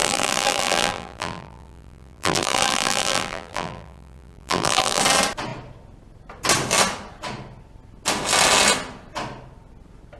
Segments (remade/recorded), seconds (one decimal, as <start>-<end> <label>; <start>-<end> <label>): 0.0-5.0 remade; 5.0-10.2 recorded